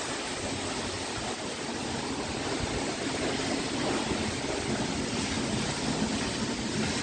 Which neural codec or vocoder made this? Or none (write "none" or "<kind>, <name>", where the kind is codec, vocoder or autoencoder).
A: none